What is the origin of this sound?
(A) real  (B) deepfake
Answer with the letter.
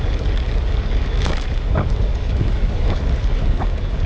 B